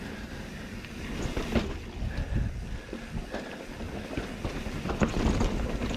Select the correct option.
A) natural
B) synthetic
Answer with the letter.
A